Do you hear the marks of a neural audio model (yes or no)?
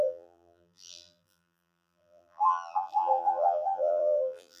yes